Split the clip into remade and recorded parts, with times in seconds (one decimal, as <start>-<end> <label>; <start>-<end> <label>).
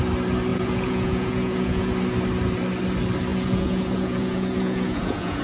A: 0.0-0.5 recorded; 0.5-1.9 remade; 1.9-3.3 recorded; 3.3-5.4 remade